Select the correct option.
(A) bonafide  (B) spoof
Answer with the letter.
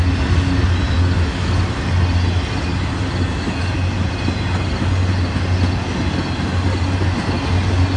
A